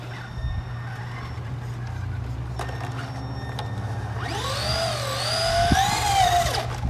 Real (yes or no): yes